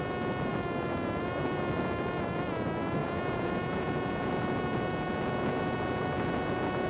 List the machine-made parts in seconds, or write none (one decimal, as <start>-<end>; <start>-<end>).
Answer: 3.0-4.3